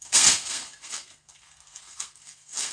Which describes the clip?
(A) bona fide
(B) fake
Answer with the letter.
B